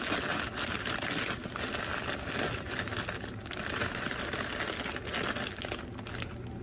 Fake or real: real